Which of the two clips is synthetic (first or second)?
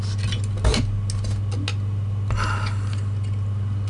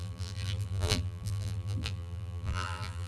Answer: second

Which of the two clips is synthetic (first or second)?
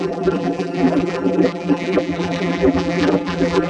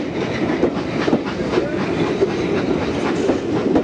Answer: first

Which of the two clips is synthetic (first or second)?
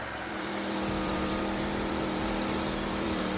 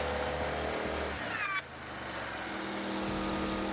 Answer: first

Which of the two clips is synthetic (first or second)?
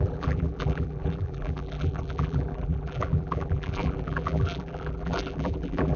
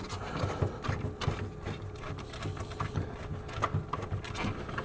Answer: first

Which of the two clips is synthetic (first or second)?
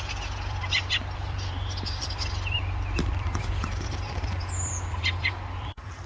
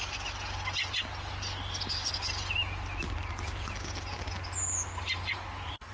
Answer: first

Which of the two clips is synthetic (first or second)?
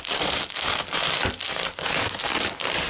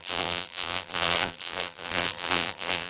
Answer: second